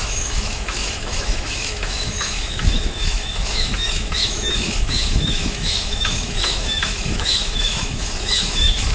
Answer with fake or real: fake